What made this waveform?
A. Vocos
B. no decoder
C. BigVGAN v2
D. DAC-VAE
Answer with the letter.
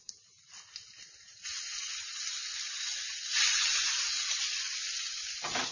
B